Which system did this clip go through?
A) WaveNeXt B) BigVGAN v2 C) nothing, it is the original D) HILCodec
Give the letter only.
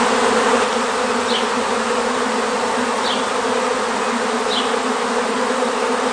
C